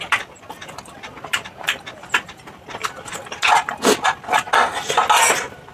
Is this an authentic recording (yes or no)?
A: yes